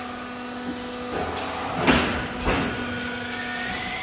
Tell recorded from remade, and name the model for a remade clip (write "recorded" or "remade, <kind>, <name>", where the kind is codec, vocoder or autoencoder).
recorded